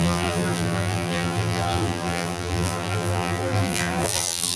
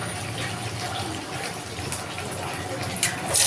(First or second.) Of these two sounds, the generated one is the first